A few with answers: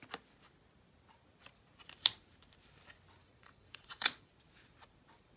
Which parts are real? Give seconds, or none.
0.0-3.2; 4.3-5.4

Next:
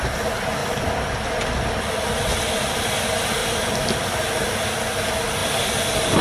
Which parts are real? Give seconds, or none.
0.0-2.3; 2.9-3.4; 4.1-5.4

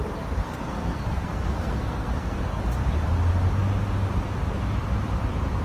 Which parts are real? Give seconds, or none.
0.0-0.4; 2.6-5.6

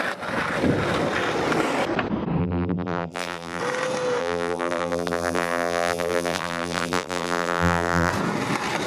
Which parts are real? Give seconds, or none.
0.0-2.4; 3.6-4.2; 8.1-8.9

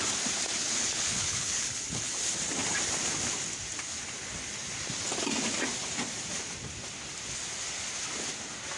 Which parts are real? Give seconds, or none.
0.0-0.6; 2.1-8.8